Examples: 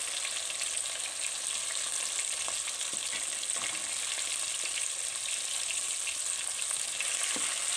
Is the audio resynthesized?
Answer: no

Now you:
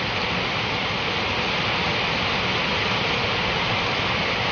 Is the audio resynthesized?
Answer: no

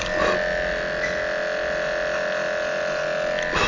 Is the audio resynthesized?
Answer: no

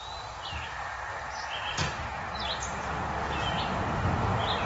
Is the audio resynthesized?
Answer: no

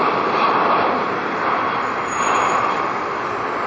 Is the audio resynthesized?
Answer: yes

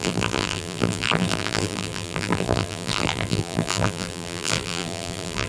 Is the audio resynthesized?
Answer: yes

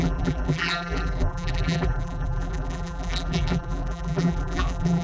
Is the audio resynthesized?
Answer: yes